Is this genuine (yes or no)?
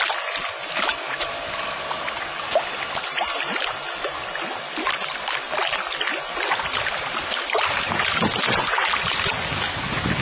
yes